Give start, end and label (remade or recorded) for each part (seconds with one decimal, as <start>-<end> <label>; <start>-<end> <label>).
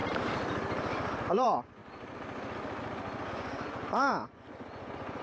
0.0-1.3 recorded; 1.3-1.8 remade; 1.8-3.3 recorded; 3.3-5.2 remade